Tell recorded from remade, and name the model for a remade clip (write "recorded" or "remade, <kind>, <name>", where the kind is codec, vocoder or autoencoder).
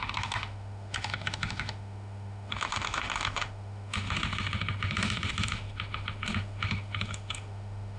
remade, autoencoder, DAC-VAE